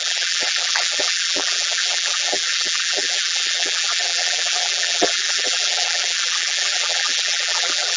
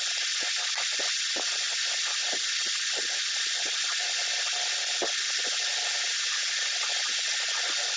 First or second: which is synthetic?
first